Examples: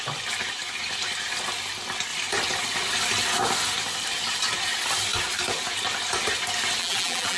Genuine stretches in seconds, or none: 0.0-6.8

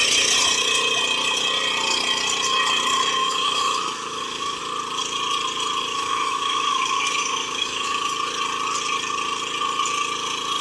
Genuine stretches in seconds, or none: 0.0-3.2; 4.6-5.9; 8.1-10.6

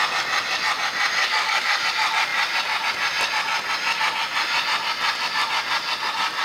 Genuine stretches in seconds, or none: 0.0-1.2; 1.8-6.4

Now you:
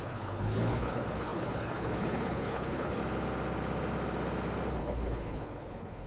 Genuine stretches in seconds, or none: 3.0-4.8

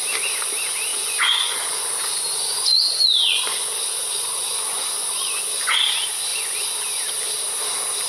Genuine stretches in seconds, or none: 0.0-0.9; 5.8-6.3; 7.0-8.1

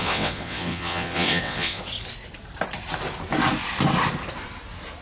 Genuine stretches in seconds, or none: 1.8-5.0

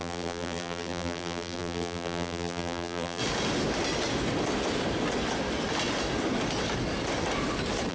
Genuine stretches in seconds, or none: 3.2-7.9